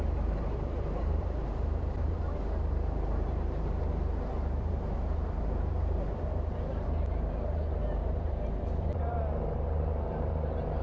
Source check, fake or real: fake